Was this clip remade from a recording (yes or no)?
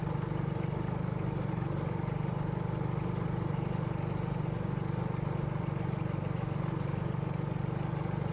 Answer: no